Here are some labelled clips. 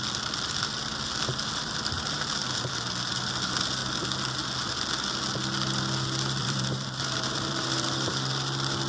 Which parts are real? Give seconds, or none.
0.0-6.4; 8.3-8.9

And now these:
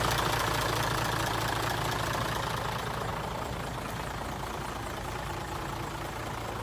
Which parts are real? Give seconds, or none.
0.0-3.1; 5.6-6.6

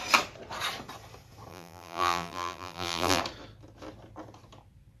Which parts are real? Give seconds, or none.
0.0-1.5; 3.2-5.0

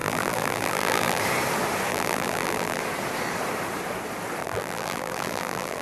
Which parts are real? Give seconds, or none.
1.2-1.9; 2.8-4.4

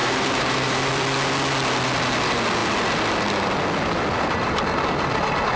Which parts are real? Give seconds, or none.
0.9-5.6

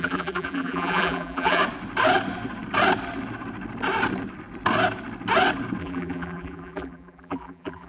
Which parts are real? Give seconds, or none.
1.6-5.8

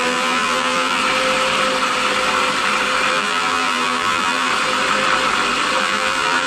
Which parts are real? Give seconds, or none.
1.0-3.1; 4.5-5.8